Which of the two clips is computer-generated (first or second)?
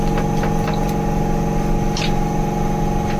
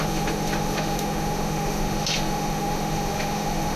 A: second